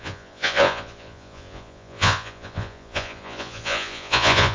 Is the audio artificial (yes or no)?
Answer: yes